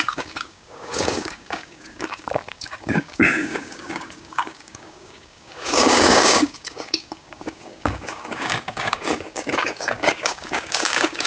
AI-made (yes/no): yes